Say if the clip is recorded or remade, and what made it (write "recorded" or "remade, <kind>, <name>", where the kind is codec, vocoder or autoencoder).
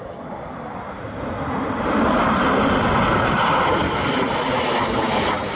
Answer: recorded